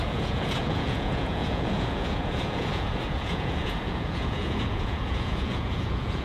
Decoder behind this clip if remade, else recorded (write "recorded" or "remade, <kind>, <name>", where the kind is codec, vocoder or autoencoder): remade, vocoder, Vocos